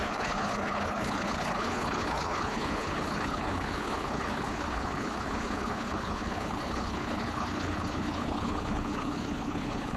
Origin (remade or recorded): remade